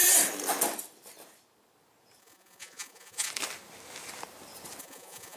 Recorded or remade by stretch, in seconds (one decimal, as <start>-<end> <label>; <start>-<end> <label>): 0.0-2.2 recorded; 2.2-3.3 remade; 3.3-4.8 recorded; 4.8-5.4 remade